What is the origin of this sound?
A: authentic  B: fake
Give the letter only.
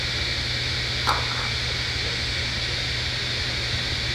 A